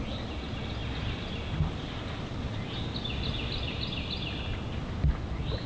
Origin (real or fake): real